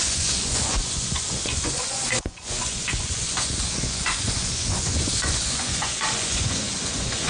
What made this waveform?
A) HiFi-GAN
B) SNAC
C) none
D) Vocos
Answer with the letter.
D